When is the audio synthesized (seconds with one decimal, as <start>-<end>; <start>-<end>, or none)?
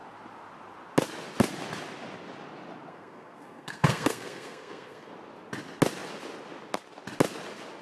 2.9-5.1